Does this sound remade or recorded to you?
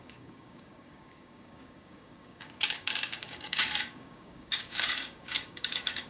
remade